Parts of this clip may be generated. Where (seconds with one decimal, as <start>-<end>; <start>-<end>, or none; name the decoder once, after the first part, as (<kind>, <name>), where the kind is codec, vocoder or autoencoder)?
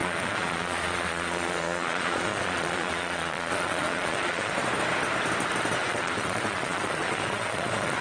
0.0-4.5 (vocoder, Vocos); 5.8-8.0